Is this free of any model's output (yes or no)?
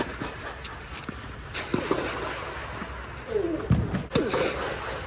yes